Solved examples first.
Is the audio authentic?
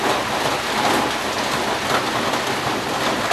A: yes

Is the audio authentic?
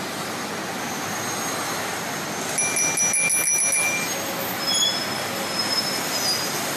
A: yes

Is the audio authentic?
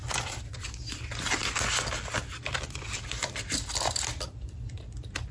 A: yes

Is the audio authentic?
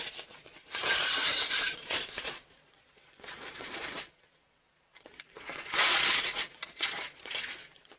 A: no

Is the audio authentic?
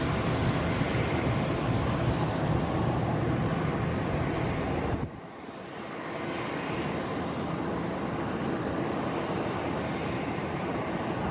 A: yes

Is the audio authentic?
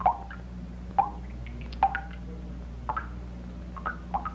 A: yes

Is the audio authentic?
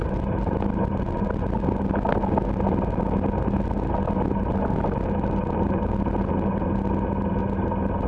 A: yes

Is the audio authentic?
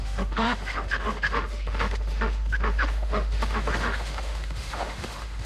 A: no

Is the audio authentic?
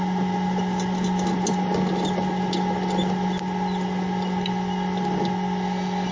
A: yes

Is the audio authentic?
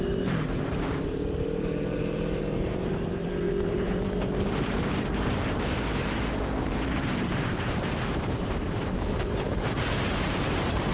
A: no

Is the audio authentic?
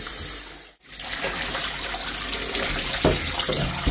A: yes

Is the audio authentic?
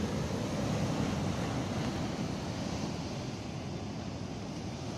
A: yes